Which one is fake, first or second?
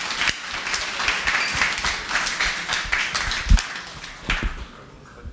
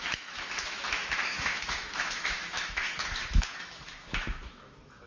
second